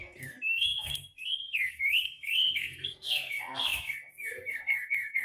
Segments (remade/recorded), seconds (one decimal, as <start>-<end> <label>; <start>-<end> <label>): 0.0-5.2 remade